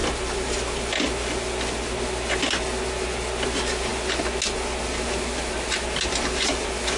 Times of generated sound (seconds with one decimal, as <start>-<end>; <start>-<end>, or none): none

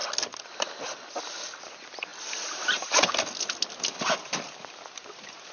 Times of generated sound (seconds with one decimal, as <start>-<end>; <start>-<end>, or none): none

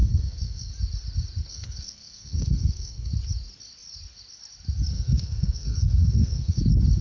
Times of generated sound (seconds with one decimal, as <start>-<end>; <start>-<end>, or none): 0.0-0.7; 1.5-3.1; 4.9-6.6

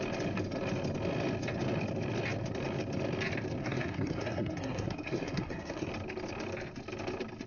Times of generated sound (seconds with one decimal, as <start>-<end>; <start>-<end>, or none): 3.6-5.9

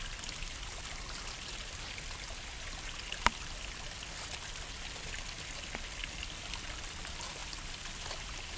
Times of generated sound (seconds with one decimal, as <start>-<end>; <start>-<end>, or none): none

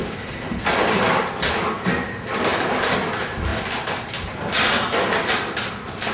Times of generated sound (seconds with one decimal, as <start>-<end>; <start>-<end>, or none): none

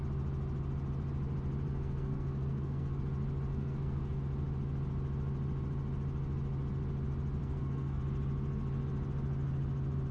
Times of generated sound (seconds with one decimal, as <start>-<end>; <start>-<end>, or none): 1.7-3.0; 3.5-4.2; 7.4-8.0